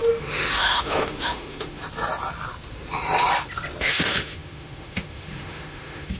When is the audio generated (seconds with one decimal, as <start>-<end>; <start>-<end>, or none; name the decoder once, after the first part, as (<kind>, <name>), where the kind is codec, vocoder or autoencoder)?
0.0-1.8 (autoencoder, DAC-VAE); 3.8-6.2